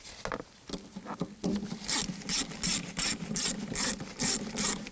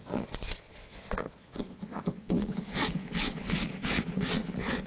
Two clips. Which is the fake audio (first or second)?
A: second